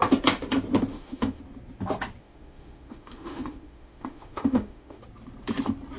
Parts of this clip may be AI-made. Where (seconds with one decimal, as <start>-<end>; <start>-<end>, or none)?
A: 0.9-1.4; 2.2-5.0